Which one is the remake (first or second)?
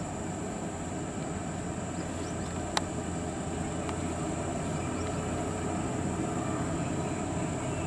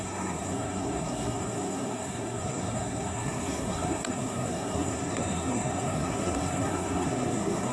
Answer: second